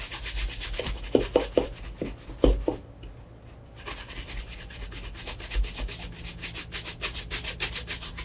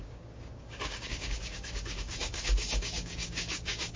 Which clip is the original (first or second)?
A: first